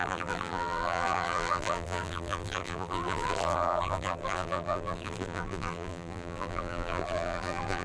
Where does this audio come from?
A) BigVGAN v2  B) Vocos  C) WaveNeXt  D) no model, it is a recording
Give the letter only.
A